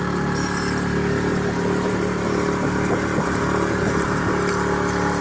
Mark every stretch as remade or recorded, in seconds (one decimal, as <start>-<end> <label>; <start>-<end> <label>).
0.0-1.3 recorded; 1.3-4.4 remade; 4.4-5.2 recorded